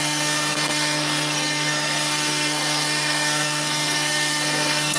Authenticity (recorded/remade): remade